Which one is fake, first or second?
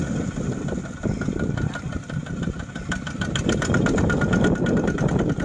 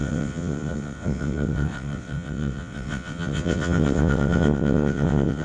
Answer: second